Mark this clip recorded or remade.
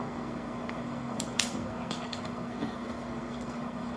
remade